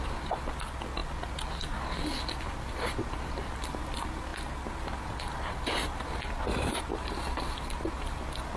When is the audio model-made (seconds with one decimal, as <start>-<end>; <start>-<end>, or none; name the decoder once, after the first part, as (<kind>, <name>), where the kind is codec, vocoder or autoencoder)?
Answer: none